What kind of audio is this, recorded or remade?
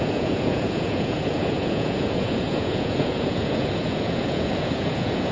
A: remade